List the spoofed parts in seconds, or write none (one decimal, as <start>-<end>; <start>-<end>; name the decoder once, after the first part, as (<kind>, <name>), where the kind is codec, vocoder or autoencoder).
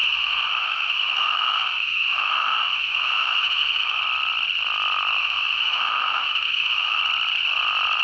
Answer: 0.0-4.0 (autoencoder, DAC-VAE); 5.2-7.0